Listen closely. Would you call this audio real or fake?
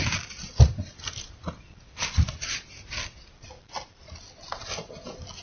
real